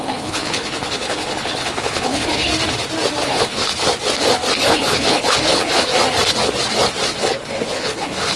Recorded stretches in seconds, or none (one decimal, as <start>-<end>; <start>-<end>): 2.5-3.2; 3.7-4.5; 5.9-7.2